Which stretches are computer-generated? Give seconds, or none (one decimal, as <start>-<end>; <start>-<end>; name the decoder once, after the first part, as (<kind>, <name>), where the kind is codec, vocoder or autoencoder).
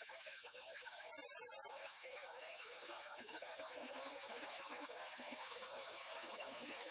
0.0-1.1 (codec, SNAC); 1.7-6.9